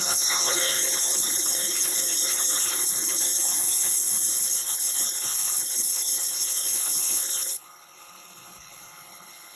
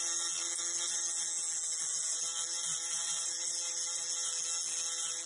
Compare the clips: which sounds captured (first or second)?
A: second